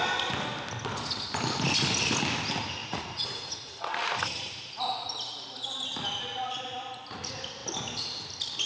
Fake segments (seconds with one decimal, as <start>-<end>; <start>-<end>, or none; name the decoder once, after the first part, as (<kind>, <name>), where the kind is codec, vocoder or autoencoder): 2.8-3.8 (vocoder, Vocos)